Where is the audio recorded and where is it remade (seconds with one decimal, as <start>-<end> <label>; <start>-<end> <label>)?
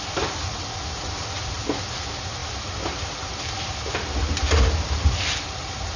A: 0.0-6.0 recorded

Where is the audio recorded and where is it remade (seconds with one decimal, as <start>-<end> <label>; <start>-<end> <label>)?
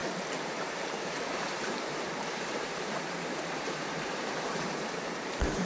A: 0.0-0.7 recorded; 0.7-5.7 remade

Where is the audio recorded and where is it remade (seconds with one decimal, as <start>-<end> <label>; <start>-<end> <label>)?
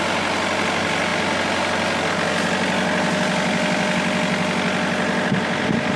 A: 0.0-6.0 recorded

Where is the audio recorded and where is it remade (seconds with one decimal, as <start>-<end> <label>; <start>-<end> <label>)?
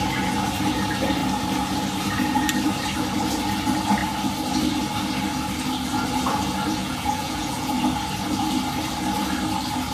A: 0.0-6.8 recorded; 6.8-7.7 remade; 7.7-9.9 recorded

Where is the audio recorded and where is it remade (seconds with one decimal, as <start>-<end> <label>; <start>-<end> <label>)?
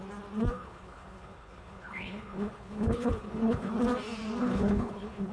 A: 0.0-0.5 recorded; 0.5-3.7 remade; 3.7-4.4 recorded; 4.4-5.3 remade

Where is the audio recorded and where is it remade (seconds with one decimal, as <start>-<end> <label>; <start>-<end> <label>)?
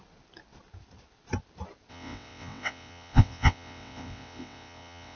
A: 0.0-1.9 recorded; 1.9-5.2 remade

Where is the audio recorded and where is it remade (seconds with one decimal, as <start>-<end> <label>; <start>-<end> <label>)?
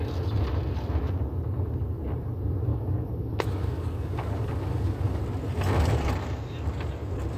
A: 0.0-2.7 recorded; 2.7-5.2 remade; 5.2-7.4 recorded